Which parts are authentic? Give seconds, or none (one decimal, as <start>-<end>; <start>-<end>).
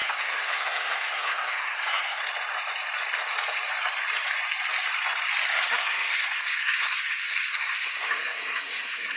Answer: 2.2-5.5